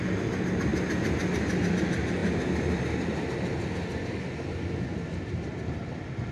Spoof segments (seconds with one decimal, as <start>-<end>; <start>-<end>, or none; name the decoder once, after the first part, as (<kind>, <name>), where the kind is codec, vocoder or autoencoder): none